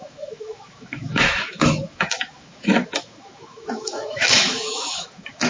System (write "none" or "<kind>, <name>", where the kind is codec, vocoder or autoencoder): autoencoder, DAC-VAE